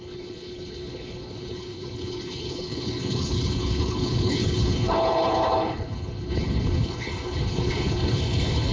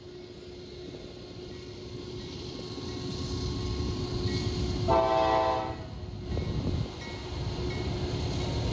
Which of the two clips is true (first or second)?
second